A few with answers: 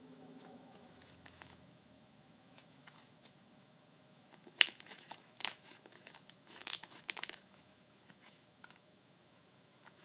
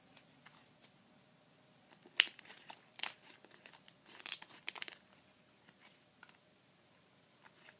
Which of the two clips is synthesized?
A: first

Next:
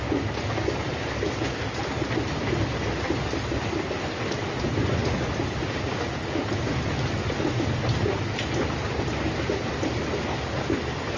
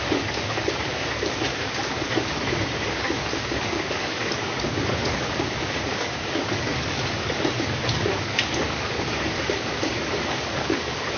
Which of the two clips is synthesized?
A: second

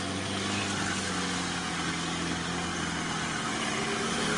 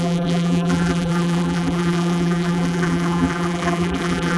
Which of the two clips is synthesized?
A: second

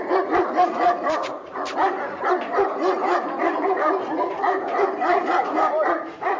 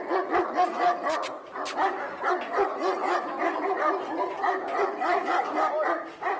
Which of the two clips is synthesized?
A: first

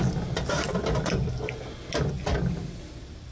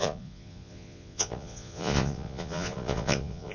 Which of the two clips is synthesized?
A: second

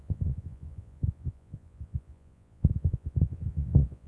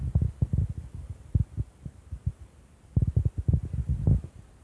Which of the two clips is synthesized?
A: first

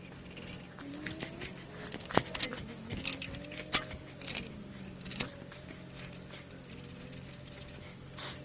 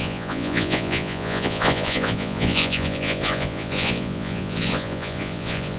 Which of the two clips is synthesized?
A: second